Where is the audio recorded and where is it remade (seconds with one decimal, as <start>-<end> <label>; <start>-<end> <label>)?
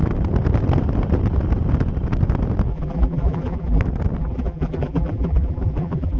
0.0-2.7 recorded; 2.7-3.8 remade; 3.8-4.2 recorded; 4.2-6.2 remade